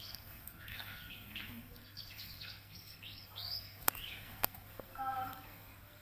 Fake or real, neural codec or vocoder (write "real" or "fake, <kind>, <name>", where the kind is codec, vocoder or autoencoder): fake, codec, SNAC